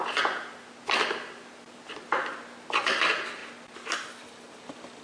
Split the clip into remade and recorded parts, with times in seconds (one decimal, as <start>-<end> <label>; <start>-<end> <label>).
0.0-5.0 recorded